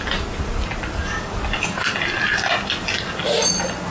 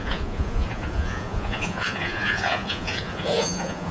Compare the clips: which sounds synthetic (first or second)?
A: second